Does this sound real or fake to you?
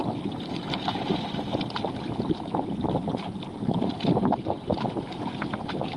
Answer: real